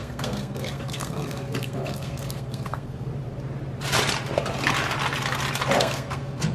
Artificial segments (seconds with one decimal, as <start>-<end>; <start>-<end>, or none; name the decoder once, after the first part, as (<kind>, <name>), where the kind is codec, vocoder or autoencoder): 0.0-3.1 (codec, SNAC); 5.8-6.5